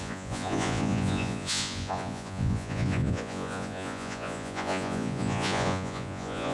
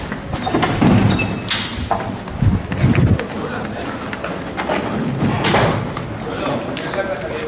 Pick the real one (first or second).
second